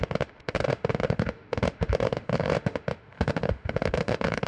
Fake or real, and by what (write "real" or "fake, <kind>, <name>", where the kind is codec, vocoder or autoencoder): fake, autoencoder, DAC-VAE